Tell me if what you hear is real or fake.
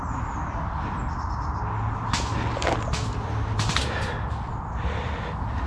real